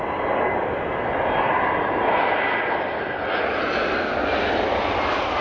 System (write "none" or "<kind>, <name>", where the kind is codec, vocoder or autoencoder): none